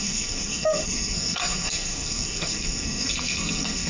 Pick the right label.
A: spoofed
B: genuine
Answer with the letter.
A